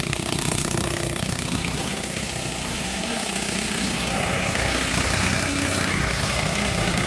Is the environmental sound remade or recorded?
remade